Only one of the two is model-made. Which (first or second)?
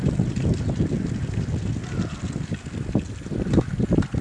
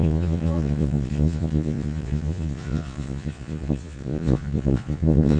second